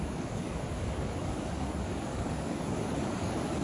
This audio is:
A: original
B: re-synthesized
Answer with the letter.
B